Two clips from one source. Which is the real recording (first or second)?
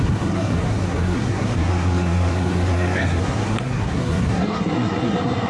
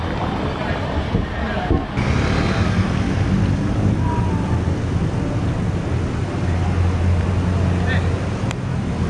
second